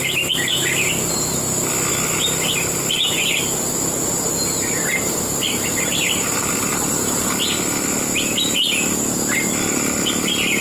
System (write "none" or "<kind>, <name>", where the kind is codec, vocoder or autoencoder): none